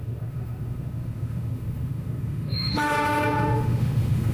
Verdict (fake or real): fake